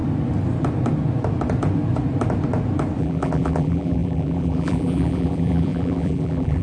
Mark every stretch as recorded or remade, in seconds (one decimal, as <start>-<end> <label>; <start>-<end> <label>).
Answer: 0.0-3.0 recorded; 3.0-6.6 remade